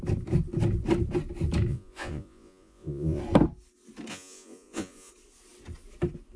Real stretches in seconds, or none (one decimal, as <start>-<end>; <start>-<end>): 0.0-1.7; 3.2-4.1; 5.1-6.4